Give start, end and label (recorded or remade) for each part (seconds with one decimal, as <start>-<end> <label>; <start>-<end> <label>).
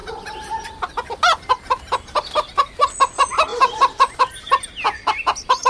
0.0-3.5 recorded; 3.5-4.6 remade; 4.6-5.7 recorded